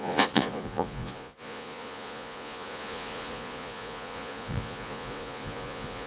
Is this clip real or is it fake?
fake